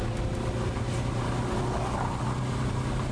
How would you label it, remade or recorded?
recorded